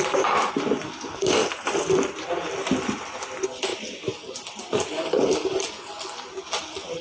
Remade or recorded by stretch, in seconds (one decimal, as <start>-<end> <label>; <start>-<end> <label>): 0.0-1.4 remade; 1.4-1.9 recorded; 1.9-3.7 remade; 3.7-4.6 recorded; 4.6-7.0 remade